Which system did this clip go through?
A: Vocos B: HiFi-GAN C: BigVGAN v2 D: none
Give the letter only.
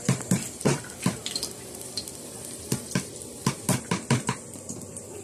C